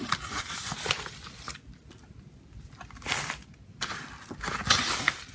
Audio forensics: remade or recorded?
recorded